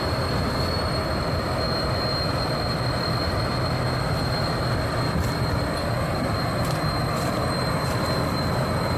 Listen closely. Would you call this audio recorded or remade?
recorded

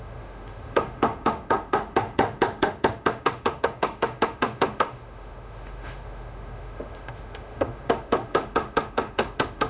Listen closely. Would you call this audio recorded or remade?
remade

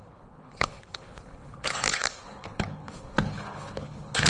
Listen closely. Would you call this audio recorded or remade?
remade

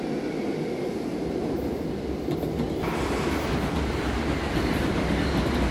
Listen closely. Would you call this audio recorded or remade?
recorded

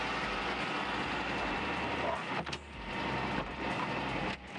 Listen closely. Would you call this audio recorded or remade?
recorded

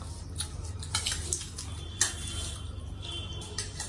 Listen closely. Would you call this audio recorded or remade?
recorded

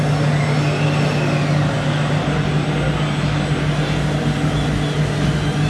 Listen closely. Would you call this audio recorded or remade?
recorded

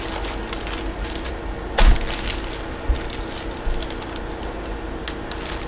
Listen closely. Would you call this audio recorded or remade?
recorded